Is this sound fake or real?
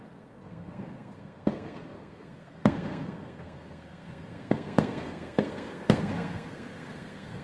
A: fake